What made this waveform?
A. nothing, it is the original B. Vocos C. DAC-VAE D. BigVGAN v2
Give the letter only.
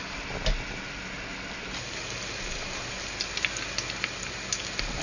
A